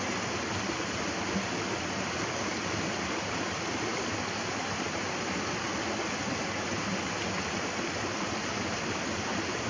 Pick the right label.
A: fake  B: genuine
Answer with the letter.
B